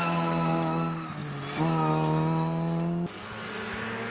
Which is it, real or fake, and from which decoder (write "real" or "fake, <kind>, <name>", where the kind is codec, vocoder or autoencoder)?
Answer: real